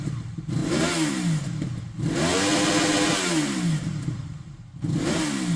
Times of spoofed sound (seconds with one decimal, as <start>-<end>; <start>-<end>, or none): 2.3-4.6